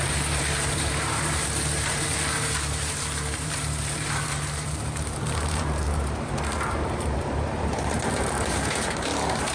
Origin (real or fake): fake